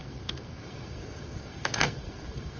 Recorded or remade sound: remade